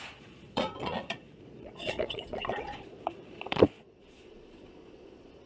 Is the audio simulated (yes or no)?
yes